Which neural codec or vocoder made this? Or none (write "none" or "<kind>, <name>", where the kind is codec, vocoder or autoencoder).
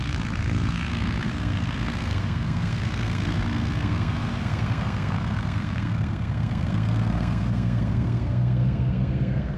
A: codec, SNAC